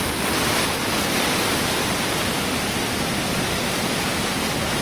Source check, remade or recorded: recorded